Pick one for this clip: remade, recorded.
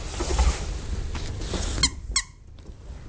recorded